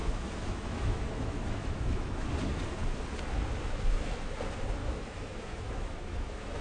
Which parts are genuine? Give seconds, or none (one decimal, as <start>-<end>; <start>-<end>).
2.3-4.8